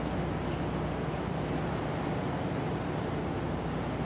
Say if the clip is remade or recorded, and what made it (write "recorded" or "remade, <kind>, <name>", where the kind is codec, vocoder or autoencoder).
recorded